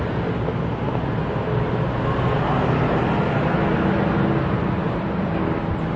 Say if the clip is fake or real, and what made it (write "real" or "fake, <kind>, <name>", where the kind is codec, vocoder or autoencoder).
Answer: real